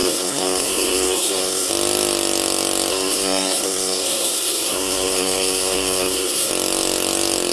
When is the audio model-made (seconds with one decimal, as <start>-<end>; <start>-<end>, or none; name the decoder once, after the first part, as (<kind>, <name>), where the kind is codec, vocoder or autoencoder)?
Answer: 0.0-1.7 (codec, SNAC); 2.9-6.5